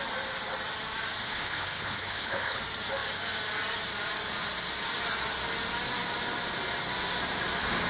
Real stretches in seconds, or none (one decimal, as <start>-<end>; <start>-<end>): 0.0-1.2; 2.6-7.9